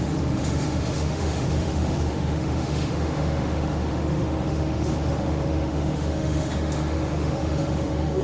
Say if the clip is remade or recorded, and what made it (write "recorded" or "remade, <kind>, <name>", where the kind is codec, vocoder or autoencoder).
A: remade, autoencoder, DAC-VAE